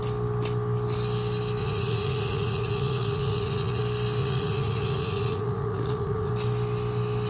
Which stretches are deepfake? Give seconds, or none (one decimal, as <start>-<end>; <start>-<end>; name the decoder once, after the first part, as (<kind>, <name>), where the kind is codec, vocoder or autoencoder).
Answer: 1.6-3.8 (vocoder, Vocos); 4.2-6.3

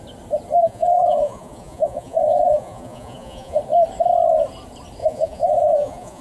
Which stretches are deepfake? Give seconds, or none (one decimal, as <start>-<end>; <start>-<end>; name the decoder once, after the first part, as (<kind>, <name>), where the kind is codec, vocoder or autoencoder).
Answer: 0.6-3.6 (vocoder, Vocos); 5.0-6.2

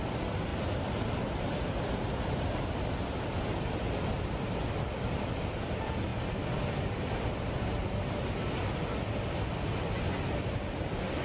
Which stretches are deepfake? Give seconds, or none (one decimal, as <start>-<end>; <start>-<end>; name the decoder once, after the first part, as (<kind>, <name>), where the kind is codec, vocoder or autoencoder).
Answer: none